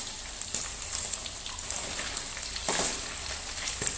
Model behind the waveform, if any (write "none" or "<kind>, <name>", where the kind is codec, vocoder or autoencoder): none